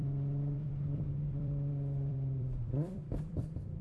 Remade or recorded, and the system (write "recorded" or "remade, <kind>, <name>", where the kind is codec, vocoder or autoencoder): remade, vocoder, BigVGAN v2